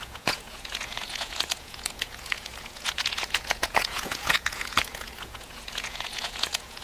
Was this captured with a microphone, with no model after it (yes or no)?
no